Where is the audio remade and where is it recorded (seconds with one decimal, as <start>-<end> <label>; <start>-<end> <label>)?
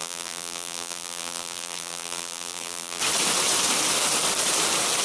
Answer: 0.0-3.0 remade; 3.0-5.0 recorded